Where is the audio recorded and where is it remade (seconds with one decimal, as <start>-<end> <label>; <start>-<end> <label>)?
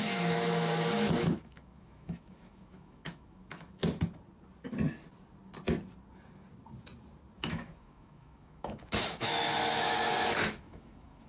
0.0-3.8 remade; 3.8-7.4 recorded; 7.4-11.3 remade